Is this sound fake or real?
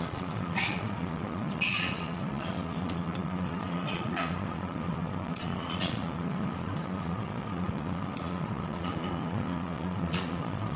fake